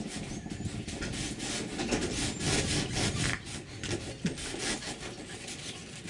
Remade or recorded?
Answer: recorded